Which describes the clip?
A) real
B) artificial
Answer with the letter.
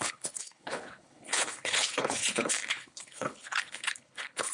B